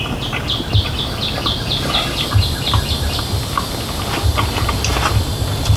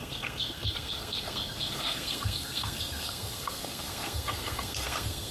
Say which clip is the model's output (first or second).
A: second